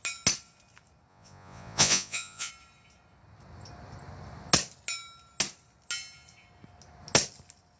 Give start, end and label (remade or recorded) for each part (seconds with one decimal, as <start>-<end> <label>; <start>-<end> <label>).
0.0-1.1 recorded; 1.1-2.5 remade; 2.5-7.8 recorded

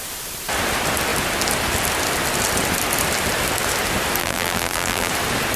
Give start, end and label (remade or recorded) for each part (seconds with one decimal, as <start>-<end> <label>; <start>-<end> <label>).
0.0-4.2 recorded; 4.2-5.1 remade; 5.1-5.6 recorded

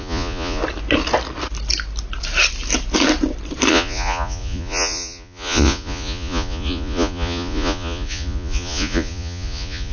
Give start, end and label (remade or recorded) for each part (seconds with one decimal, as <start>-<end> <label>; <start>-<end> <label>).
0.0-0.6 remade; 0.6-3.7 recorded; 3.7-9.9 remade

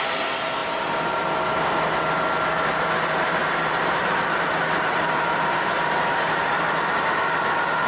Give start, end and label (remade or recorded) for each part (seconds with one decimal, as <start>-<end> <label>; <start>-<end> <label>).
0.0-0.6 recorded; 0.6-1.2 remade; 1.2-3.4 recorded; 3.4-6.9 remade; 6.9-7.9 recorded

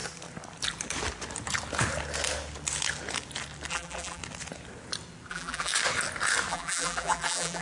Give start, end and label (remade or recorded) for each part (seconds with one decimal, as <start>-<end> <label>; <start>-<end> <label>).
0.0-3.7 recorded; 3.7-4.2 remade; 4.2-5.3 recorded; 5.3-5.7 remade; 5.7-6.5 recorded; 6.5-7.6 remade

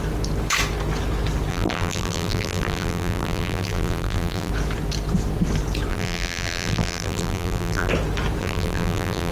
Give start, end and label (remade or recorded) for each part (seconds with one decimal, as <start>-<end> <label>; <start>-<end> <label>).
0.0-1.5 recorded; 1.5-4.5 remade; 4.5-5.9 recorded; 5.9-7.9 remade; 7.9-8.4 recorded; 8.4-9.3 remade

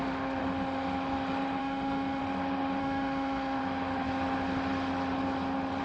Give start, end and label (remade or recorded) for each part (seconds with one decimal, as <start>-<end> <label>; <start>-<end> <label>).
0.0-0.4 remade; 0.4-1.6 recorded; 1.6-2.2 remade; 2.2-2.8 recorded; 2.8-3.6 remade; 3.6-5.8 recorded